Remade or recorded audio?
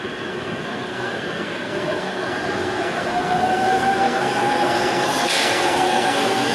remade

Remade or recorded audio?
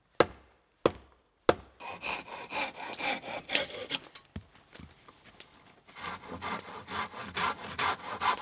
recorded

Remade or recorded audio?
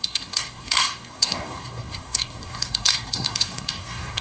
remade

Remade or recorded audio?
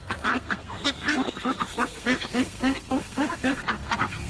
remade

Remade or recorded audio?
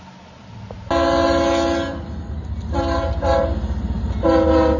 recorded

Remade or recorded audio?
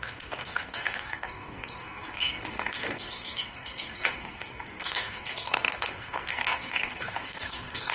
remade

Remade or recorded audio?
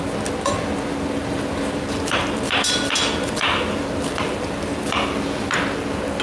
recorded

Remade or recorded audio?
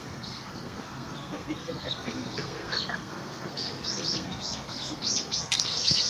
remade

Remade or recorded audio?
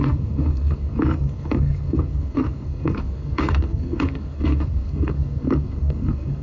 remade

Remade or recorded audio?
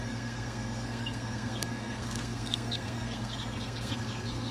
remade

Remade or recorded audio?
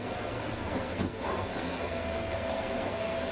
remade